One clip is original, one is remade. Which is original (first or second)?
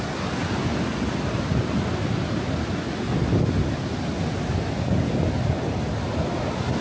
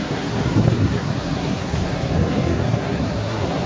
first